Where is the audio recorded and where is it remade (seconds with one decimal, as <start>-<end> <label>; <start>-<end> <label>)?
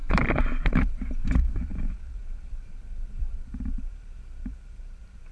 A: 0.0-0.6 recorded; 0.6-5.3 remade